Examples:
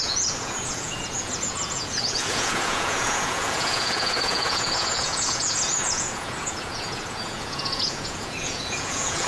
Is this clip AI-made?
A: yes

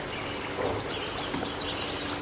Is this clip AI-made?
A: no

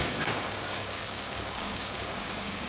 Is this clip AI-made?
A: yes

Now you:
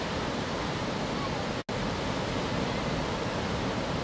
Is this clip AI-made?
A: no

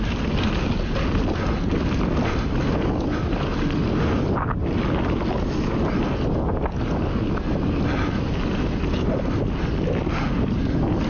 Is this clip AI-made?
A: no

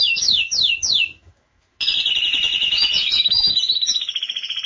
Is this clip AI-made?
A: yes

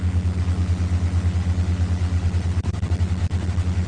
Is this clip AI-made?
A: no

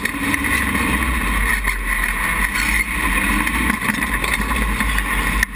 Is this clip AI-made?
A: no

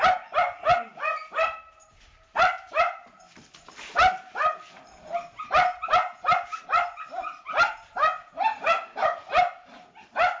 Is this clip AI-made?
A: no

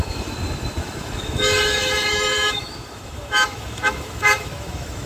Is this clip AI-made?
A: yes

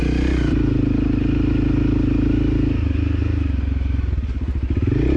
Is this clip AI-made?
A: no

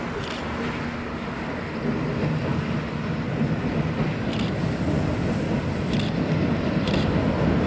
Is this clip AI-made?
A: no